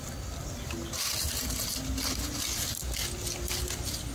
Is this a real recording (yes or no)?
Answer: yes